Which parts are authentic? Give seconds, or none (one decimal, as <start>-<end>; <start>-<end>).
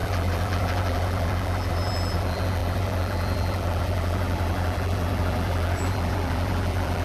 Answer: none